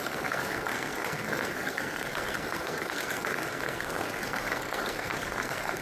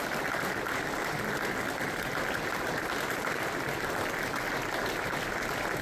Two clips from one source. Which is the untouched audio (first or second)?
second